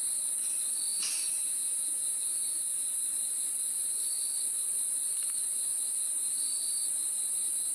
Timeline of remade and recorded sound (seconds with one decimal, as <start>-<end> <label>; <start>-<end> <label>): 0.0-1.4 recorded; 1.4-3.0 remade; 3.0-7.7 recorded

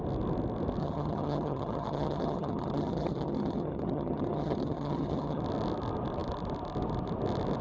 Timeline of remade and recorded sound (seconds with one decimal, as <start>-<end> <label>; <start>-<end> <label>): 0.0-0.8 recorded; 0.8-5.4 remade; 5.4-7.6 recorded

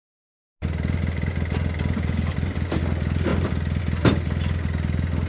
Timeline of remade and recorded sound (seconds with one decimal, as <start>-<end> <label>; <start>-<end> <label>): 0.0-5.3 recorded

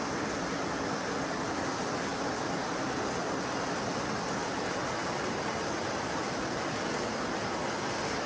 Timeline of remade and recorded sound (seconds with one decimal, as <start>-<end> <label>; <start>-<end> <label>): 0.0-8.3 recorded

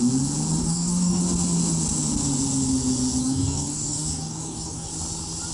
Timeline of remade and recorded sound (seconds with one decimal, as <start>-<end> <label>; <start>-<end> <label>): 0.0-0.6 recorded; 0.6-1.2 remade; 1.2-3.2 recorded; 3.2-4.9 remade; 4.9-5.5 recorded

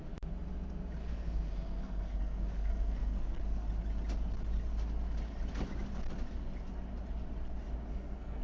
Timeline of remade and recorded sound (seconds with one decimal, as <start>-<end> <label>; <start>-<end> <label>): 0.0-1.0 recorded; 1.0-3.4 remade; 3.4-7.9 recorded; 7.9-8.4 remade

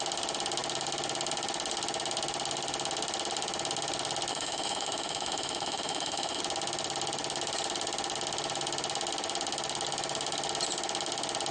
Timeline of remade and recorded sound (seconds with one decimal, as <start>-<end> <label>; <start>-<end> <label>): 0.0-4.3 recorded; 4.3-6.4 remade; 6.4-11.5 recorded